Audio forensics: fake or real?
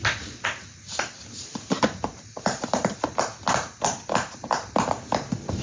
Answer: real